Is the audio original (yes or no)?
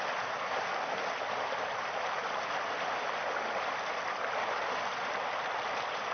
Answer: yes